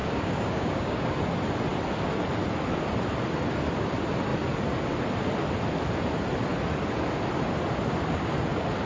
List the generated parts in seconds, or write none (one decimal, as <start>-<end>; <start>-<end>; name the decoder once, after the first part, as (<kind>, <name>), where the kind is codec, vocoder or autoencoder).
0.0-1.2 (codec, DAC)